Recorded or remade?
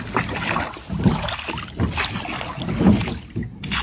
recorded